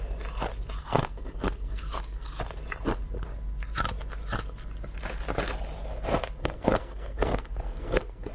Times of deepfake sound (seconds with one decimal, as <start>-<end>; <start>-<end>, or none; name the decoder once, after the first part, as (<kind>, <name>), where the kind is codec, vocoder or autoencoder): 0.8-2.4 (codec, SNAC); 6.4-8.3